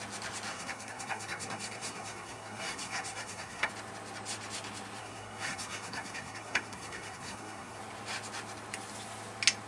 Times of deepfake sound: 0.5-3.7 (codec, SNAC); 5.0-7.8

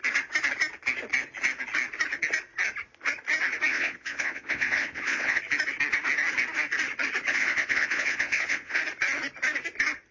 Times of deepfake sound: 3.7-5.4 (vocoder, Vocos); 7.3-8.8

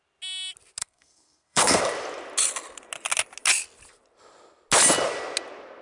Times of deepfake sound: 0.8-1.8 (codec, SNAC)